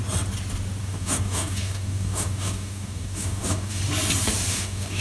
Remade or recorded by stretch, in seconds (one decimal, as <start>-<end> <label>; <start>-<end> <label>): 0.0-0.8 recorded; 0.8-3.8 remade; 3.8-4.5 recorded; 4.5-5.0 remade